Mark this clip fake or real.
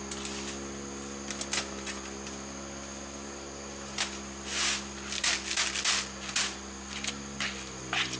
real